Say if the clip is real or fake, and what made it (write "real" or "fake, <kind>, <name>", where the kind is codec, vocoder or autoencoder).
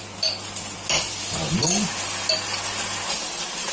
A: real